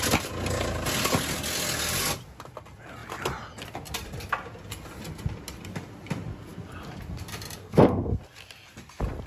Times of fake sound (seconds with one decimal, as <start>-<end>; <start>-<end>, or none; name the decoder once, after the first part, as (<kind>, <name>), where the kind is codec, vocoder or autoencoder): 7.6-8.2 (codec, SNAC)